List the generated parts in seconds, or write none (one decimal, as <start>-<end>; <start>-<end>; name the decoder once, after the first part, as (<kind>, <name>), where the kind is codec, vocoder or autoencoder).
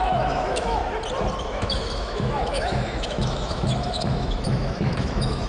0.0-0.8 (autoencoder, DAC-VAE); 1.4-5.5